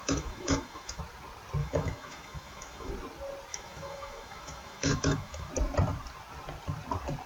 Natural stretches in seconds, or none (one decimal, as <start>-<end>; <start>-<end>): 1.0-1.6; 2.9-3.5; 5.5-7.3